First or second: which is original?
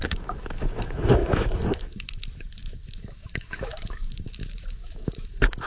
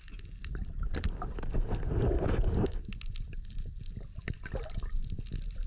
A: second